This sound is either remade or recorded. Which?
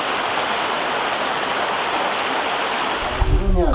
recorded